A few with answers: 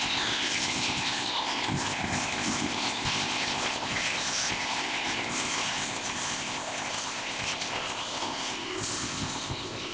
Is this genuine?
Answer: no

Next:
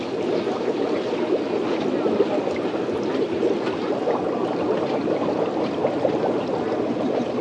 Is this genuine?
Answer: yes